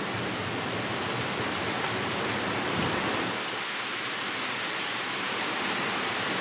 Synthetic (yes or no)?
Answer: yes